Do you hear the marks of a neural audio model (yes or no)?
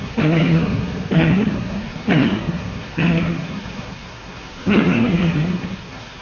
yes